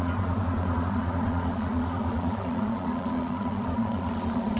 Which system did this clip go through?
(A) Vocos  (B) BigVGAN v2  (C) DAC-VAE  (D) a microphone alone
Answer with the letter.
A